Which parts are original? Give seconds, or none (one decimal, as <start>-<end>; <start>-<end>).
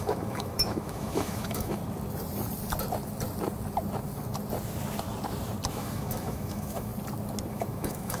1.8-5.7; 6.9-7.5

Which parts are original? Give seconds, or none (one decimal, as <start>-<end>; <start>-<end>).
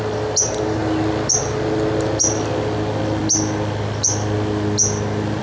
0.0-5.4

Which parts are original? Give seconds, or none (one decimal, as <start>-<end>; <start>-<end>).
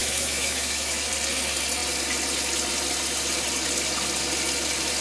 1.1-5.0